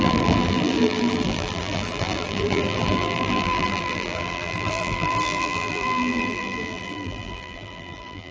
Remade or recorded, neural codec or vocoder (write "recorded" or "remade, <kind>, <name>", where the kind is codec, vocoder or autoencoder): remade, vocoder, BigVGAN v2